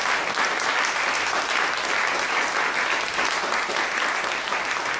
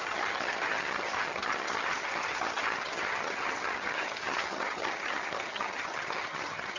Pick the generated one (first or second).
second